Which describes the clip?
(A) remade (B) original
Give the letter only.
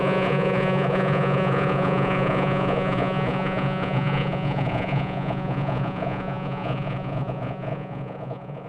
A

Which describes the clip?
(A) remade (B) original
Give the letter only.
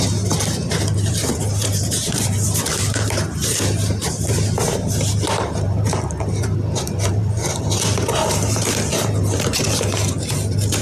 A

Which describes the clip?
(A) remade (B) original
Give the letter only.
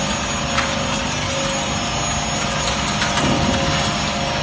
B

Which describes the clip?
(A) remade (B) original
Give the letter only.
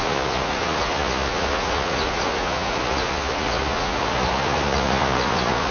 A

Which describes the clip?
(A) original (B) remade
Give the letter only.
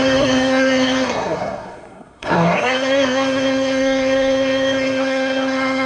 B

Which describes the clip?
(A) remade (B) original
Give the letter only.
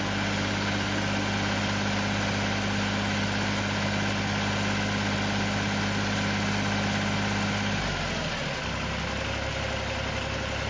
B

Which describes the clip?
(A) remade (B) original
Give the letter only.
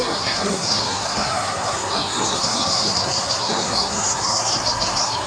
A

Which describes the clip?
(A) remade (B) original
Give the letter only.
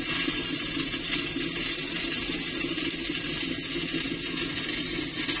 B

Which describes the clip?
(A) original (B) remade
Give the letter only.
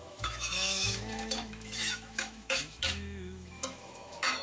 B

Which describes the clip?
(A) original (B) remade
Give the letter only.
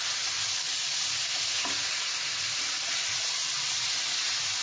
A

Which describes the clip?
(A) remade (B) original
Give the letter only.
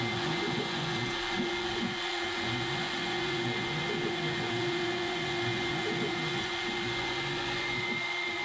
A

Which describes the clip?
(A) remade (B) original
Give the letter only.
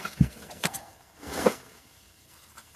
A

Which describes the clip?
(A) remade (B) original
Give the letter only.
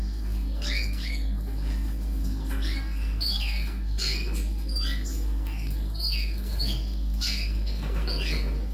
A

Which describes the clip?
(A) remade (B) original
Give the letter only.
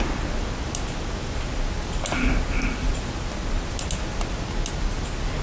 B